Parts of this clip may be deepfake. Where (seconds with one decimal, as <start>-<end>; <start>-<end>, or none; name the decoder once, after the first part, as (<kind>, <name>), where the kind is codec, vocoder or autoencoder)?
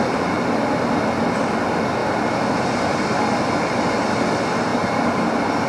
2.0-2.9 (vocoder, BigVGAN v2); 4.7-5.7